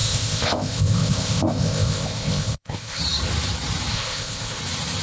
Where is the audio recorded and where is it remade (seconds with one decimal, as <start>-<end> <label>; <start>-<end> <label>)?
0.0-3.0 remade; 3.0-3.9 recorded; 3.9-4.6 remade; 4.6-5.0 recorded